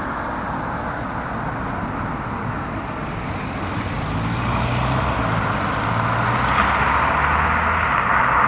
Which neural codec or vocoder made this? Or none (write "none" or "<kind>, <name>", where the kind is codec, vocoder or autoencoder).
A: none